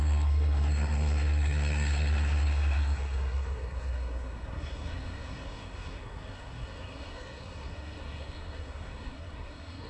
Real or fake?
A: fake